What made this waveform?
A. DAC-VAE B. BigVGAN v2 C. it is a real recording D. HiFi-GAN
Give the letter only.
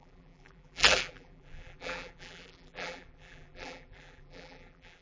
B